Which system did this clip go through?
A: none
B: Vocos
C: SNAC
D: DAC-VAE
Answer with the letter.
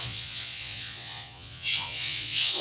B